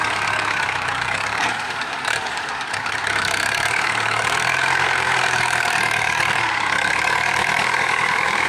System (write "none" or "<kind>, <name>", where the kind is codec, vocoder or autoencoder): codec, DAC